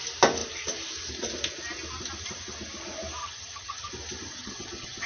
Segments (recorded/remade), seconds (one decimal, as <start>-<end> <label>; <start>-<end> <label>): 0.0-3.2 recorded; 3.2-3.9 remade; 3.9-4.4 recorded; 4.4-5.1 remade